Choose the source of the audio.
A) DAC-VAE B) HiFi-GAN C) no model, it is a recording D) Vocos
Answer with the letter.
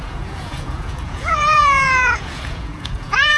D